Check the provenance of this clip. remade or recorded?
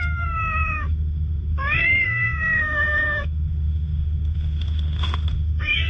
remade